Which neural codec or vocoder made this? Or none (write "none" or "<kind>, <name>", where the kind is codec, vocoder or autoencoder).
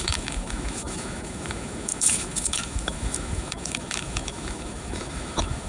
autoencoder, DAC-VAE